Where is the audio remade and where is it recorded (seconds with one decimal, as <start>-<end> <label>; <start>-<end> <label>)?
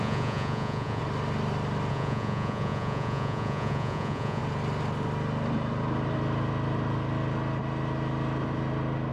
0.0-1.0 remade; 1.0-1.9 recorded; 1.9-4.4 remade; 4.4-9.1 recorded